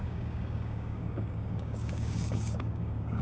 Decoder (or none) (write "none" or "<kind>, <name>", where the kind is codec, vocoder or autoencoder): codec, DAC